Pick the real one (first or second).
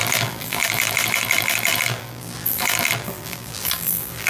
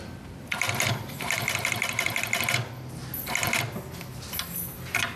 second